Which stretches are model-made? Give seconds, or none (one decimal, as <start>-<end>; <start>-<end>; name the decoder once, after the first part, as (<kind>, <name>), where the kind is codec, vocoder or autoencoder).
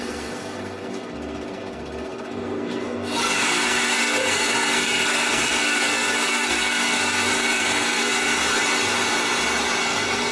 0.0-8.4 (codec, SNAC); 9.8-10.3